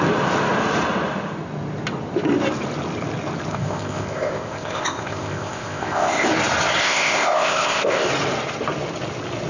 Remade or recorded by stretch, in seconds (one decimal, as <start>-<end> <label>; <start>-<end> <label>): 0.0-3.5 recorded; 3.5-6.3 remade; 6.3-6.8 recorded; 6.8-8.1 remade; 8.1-9.5 recorded